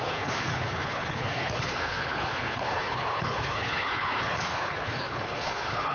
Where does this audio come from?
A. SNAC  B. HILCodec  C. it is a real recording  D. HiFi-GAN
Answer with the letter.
B